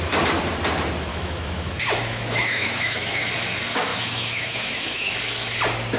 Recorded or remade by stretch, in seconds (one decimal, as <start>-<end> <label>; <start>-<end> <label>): 0.0-1.1 recorded; 1.1-3.3 remade; 3.3-3.9 recorded; 3.9-5.1 remade; 5.1-6.0 recorded